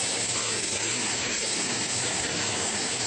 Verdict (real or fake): fake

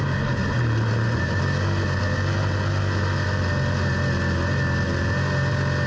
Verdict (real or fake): real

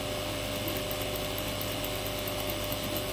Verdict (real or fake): real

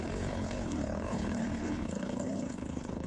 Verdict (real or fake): fake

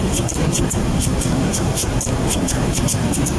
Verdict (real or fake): fake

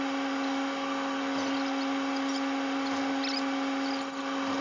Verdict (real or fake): real